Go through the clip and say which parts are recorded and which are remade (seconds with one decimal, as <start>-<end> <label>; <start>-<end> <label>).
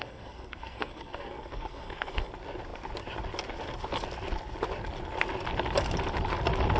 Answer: 0.0-2.3 remade; 2.3-6.8 recorded